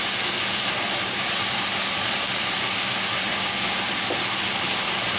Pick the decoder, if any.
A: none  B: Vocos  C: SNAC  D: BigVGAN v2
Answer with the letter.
A